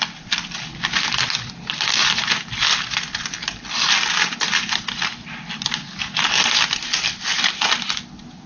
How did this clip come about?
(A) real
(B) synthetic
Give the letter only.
A